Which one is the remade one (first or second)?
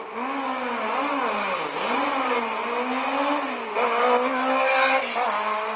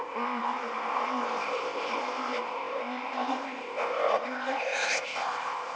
second